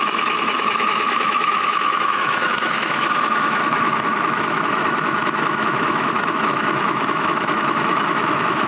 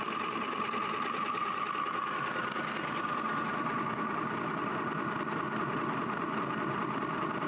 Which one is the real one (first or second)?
second